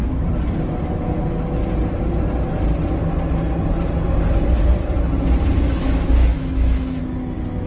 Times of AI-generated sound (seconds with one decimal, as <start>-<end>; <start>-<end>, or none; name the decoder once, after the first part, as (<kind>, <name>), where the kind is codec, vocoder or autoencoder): 6.3-7.0 (autoencoder, DAC-VAE)